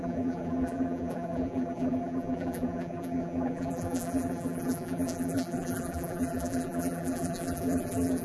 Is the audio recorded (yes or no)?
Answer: no